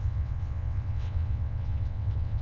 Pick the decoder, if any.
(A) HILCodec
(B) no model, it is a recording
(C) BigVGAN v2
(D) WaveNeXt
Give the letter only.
D